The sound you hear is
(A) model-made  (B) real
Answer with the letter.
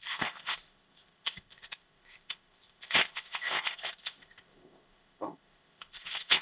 A